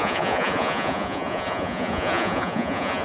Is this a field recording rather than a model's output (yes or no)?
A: no